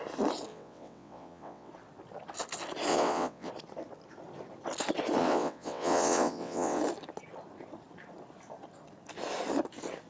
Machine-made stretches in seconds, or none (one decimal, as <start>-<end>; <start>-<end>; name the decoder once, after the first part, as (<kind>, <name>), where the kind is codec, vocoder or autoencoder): 0.5-1.7 (vocoder, WaveNeXt); 2.9-3.5; 5.2-6.8